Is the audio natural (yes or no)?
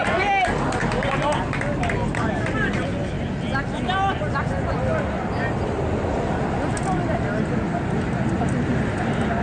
yes